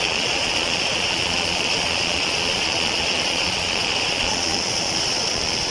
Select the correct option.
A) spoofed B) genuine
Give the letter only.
A